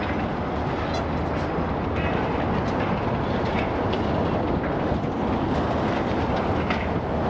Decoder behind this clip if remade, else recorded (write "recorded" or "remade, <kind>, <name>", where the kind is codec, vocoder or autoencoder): recorded